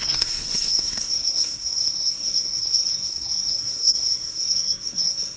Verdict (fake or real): fake